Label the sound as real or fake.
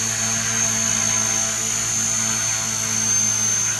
real